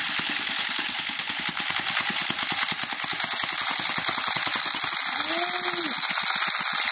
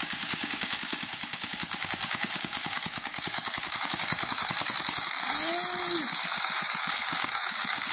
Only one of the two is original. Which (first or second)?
first